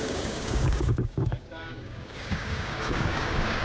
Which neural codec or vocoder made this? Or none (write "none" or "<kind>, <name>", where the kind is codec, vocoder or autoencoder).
codec, DAC